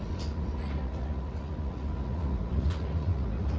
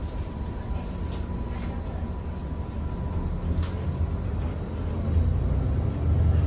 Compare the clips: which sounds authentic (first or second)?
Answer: second